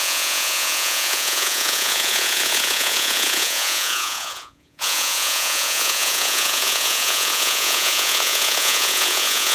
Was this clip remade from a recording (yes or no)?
yes